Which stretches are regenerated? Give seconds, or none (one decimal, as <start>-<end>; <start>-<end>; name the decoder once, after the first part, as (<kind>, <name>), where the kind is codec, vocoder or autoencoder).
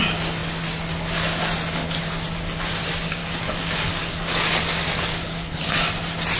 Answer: 3.2-5.9 (codec, DAC)